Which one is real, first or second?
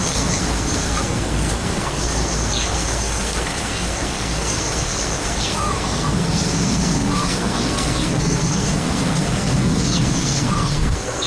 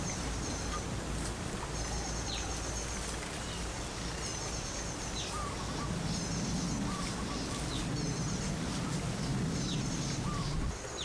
second